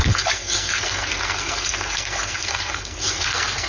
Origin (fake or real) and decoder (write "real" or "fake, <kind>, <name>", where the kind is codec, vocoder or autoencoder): fake, codec, SNAC